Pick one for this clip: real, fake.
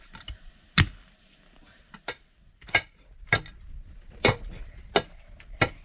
real